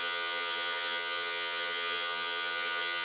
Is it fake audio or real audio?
fake